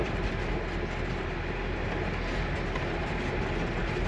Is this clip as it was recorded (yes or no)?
yes